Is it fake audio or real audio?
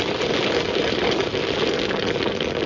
real